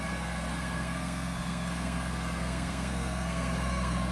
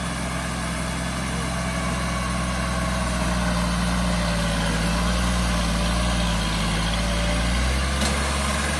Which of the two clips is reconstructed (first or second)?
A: first